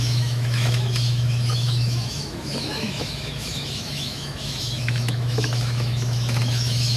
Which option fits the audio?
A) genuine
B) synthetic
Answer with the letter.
B